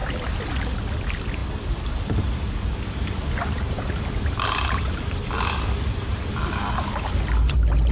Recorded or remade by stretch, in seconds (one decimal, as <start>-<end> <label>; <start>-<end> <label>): 0.0-7.9 recorded